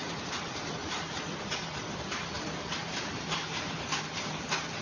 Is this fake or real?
fake